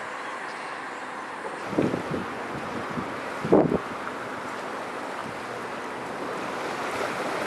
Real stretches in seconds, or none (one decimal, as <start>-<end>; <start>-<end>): 0.0-2.2; 3.1-7.5